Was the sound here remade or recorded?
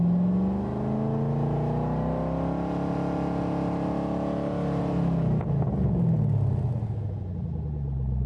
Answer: recorded